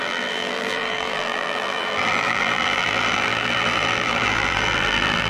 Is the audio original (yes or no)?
no